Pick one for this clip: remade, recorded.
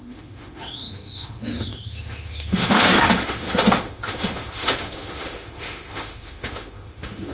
remade